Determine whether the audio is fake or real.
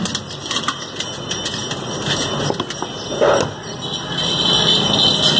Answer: real